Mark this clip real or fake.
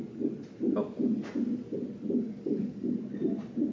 real